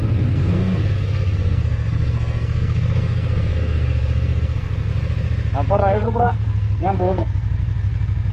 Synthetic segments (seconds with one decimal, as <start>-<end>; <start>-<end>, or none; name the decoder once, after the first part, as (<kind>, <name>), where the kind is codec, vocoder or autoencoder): 0.0-4.9 (codec, SNAC); 5.7-8.3